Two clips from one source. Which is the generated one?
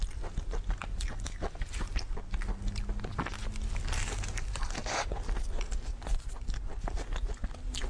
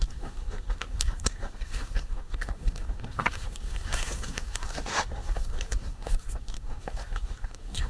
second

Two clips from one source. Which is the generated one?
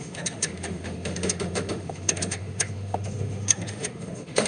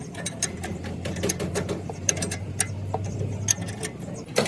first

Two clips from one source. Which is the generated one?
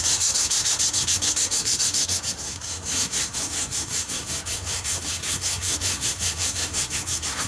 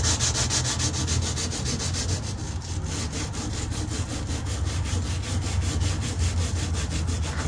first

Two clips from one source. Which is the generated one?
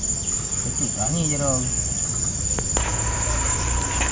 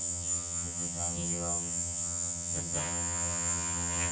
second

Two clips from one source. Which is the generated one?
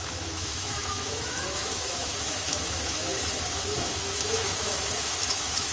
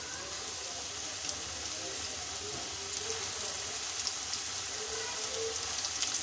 first